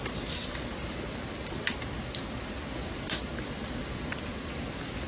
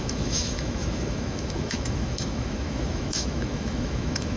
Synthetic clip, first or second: second